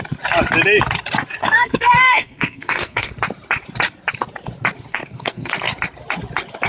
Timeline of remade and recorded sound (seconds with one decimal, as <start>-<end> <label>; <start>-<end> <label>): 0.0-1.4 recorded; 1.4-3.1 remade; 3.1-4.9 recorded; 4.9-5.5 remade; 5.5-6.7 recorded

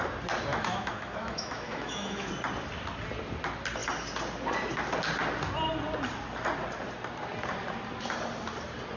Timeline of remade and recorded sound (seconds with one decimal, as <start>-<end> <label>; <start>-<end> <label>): 0.0-0.5 recorded; 0.5-2.3 remade; 2.3-9.0 recorded

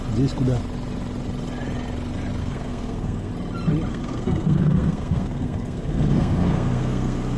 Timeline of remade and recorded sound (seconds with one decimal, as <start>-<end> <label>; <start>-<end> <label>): 0.0-2.4 recorded; 2.4-3.3 remade; 3.3-3.9 recorded; 3.9-7.4 remade

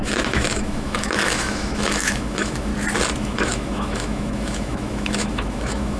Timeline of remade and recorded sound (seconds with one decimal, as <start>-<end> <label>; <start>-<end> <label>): 0.0-2.7 remade; 2.7-3.2 recorded; 3.2-6.0 remade

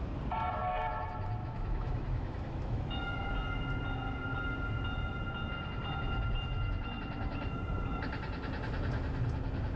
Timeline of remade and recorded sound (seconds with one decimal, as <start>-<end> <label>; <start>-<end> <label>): 0.0-1.4 recorded; 1.4-3.3 remade; 3.3-9.8 recorded